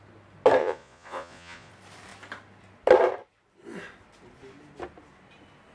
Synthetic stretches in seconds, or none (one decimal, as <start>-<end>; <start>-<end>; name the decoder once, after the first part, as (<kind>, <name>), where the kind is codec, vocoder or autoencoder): 0.6-1.7 (vocoder, Vocos)